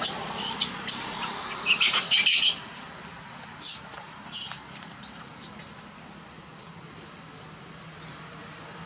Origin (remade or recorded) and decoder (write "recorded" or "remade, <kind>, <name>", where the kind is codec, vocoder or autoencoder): recorded